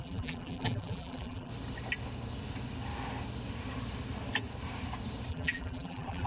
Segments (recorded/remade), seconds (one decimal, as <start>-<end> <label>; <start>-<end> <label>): 0.0-1.5 remade; 1.5-5.3 recorded; 5.3-6.3 remade